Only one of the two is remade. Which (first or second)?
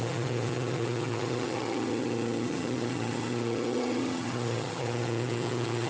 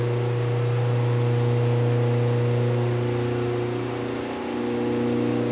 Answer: first